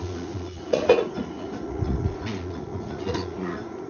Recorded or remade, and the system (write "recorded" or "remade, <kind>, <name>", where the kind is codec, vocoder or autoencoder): remade, vocoder, Vocos